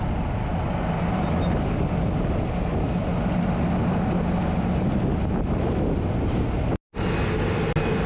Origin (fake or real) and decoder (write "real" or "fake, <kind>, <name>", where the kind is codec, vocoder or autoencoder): real